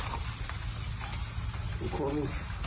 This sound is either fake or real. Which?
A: real